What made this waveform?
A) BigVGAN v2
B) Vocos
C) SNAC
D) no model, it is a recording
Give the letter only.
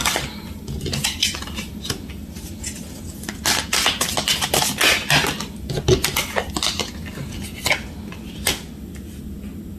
D